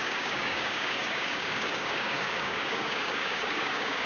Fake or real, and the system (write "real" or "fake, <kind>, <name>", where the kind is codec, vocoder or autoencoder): fake, codec, DAC